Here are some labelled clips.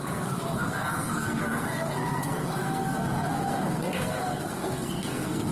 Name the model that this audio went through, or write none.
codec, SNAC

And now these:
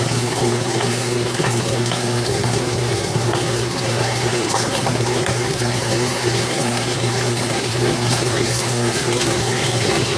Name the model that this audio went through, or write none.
codec, SNAC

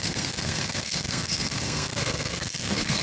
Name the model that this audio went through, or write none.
codec, SNAC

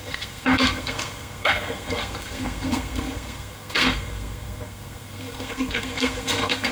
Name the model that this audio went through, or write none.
codec, SNAC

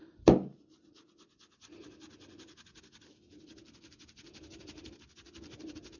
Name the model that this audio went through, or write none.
none